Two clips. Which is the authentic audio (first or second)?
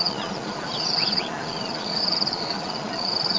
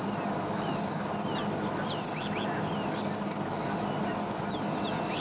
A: second